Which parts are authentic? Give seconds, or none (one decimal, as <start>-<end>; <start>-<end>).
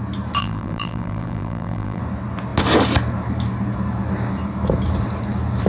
0.0-0.4; 2.0-5.7